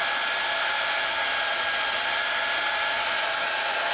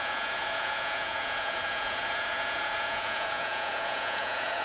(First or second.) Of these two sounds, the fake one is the second